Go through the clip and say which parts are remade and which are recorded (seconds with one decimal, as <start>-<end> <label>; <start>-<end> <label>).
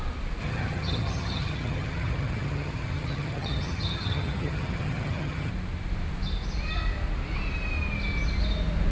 0.0-0.4 recorded; 0.4-5.5 remade; 5.5-8.9 recorded